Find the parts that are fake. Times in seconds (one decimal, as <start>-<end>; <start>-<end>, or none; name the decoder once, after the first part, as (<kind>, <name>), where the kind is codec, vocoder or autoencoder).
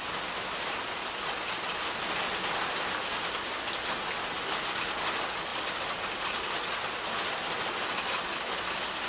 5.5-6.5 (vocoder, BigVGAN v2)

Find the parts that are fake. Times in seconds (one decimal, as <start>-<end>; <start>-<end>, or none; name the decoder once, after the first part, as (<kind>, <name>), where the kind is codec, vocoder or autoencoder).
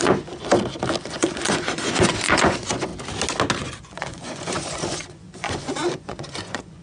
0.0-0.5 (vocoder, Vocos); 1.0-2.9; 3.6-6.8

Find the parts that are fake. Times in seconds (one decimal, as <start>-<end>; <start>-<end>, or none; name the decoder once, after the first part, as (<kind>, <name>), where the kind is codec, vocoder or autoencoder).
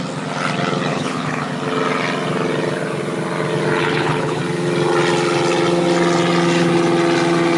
0.9-1.5 (codec, HILCodec); 3.8-4.4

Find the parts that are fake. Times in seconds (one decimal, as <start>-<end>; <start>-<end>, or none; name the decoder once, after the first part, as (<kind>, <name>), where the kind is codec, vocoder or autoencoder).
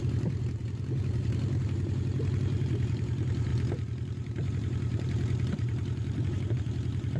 0.0-7.2 (vocoder, BigVGAN v2)